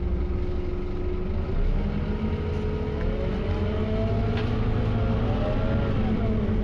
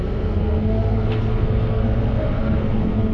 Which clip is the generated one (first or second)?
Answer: second